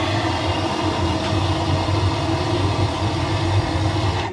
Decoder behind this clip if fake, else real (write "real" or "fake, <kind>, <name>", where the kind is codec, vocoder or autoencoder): real